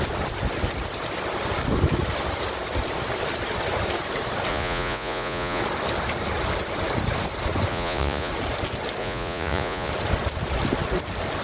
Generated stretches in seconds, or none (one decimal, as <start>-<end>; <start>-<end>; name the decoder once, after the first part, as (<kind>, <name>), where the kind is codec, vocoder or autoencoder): 4.5-5.6 (vocoder, Vocos); 7.7-8.3; 9.0-9.9